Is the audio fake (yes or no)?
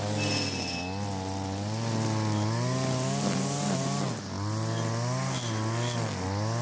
no